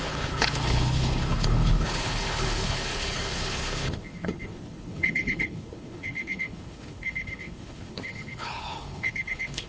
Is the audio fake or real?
fake